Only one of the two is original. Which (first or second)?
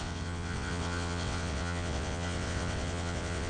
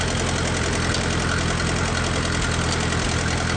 second